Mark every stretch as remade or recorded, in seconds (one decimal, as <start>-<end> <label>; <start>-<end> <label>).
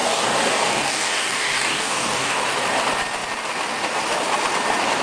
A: 0.0-2.4 remade; 2.4-5.0 recorded